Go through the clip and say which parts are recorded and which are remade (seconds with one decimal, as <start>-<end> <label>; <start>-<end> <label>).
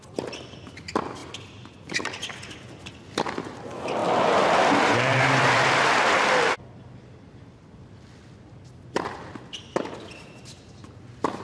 0.0-11.4 recorded